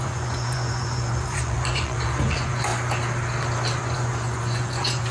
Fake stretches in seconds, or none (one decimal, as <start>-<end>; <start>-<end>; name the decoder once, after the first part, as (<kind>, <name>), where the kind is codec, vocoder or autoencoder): 0.0-2.7 (vocoder, Vocos); 3.8-5.1